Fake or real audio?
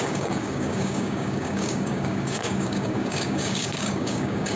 fake